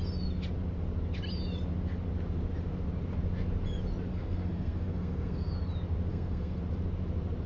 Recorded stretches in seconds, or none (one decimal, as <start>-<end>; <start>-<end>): 0.0-4.1; 5.5-6.1; 6.6-7.5